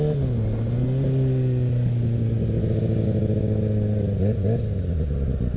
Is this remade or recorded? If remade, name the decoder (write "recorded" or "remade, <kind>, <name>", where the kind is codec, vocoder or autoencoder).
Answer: recorded